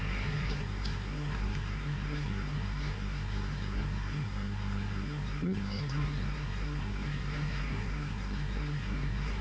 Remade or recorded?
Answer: remade